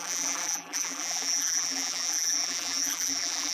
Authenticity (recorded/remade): remade